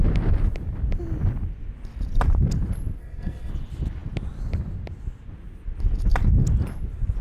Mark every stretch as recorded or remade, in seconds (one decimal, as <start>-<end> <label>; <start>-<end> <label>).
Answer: 0.0-3.0 recorded; 3.0-3.5 remade; 3.5-7.2 recorded